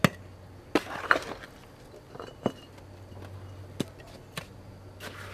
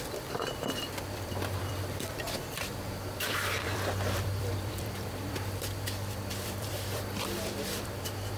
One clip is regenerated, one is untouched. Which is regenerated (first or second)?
second